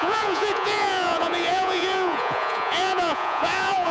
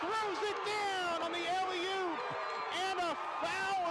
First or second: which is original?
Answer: second